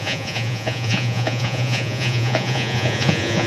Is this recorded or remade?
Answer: remade